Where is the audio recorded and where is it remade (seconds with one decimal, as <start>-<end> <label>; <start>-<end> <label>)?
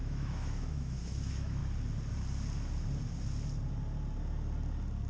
0.0-1.6 remade; 1.6-5.1 recorded